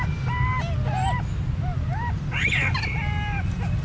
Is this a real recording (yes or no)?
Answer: yes